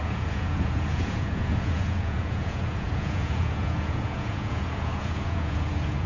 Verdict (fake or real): fake